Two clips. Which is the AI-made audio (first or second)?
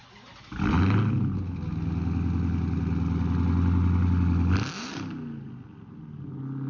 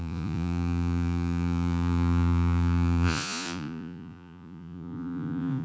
second